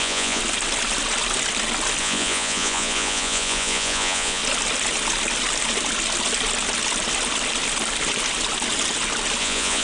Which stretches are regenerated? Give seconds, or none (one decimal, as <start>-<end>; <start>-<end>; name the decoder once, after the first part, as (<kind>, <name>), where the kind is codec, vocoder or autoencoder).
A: 0.0-0.4 (vocoder, Vocos); 2.0-4.4; 9.4-9.8